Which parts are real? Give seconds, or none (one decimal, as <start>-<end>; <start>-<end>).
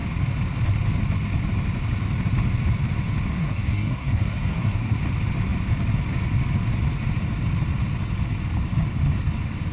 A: 0.0-3.3; 5.0-9.7